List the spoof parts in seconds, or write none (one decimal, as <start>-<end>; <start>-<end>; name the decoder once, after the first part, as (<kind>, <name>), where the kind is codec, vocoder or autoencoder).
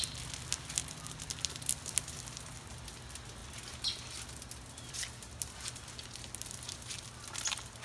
none